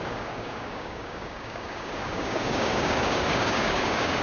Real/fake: fake